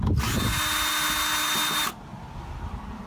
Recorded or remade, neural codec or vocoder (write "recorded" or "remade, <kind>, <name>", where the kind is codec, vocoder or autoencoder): recorded